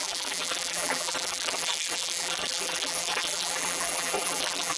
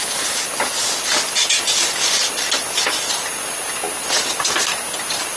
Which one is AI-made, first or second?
first